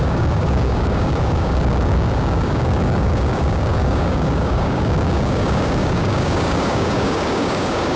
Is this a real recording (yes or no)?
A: no